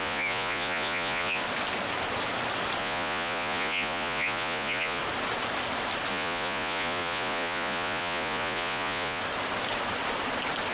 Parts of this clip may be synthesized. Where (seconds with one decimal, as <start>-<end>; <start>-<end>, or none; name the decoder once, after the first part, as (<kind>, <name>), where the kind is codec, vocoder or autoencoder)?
0.0-1.4 (vocoder, Vocos); 2.8-5.0; 6.1-9.2